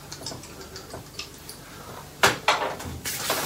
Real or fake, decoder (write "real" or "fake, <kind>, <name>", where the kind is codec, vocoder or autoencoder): real